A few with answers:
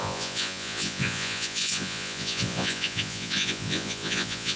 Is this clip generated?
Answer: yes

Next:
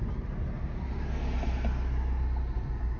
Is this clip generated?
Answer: no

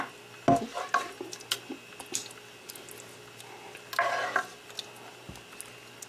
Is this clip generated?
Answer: no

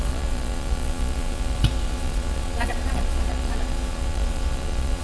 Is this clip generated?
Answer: yes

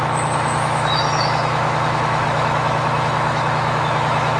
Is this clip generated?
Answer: yes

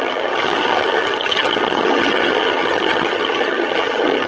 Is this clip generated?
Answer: yes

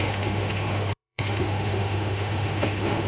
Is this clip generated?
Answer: yes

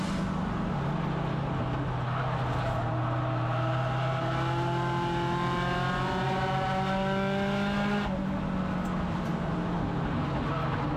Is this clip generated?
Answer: no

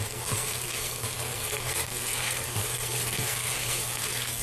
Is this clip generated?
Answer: yes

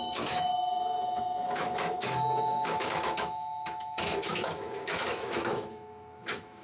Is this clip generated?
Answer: yes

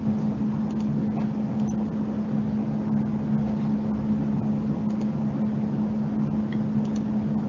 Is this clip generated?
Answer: no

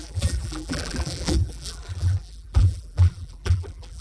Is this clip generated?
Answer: yes